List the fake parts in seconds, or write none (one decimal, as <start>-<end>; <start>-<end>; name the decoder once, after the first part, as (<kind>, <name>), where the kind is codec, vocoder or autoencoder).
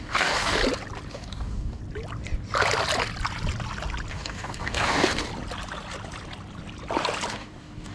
0.0-0.6 (codec, DAC); 1.1-1.8; 4.1-5.3; 7.3-7.9